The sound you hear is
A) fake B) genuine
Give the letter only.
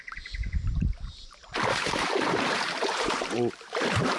A